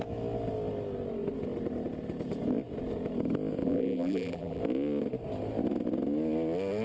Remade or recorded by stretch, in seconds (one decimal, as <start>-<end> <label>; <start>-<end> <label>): 0.0-3.6 recorded; 3.6-4.6 remade; 4.6-6.8 recorded